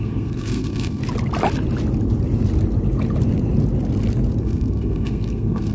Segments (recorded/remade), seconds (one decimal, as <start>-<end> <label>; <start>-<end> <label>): 0.0-1.0 remade; 1.0-4.4 recorded; 4.4-5.7 remade